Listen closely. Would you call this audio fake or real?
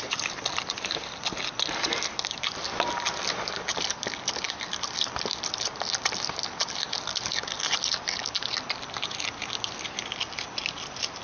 real